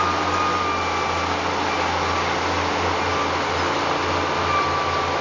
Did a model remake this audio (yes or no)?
no